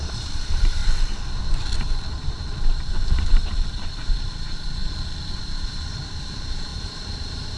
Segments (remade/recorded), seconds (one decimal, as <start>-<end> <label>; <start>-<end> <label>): 0.0-0.8 remade; 0.8-2.3 recorded; 2.3-4.8 remade; 4.8-5.4 recorded; 5.4-7.6 remade